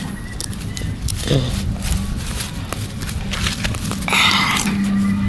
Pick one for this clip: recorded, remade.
recorded